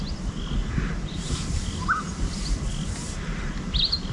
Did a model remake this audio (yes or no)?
no